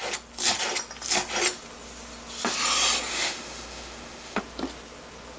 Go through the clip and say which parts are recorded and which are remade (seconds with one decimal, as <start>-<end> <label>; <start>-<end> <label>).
0.0-3.1 recorded; 3.1-4.4 remade; 4.4-5.4 recorded